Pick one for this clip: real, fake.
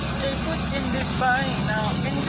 real